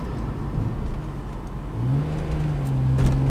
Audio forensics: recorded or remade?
recorded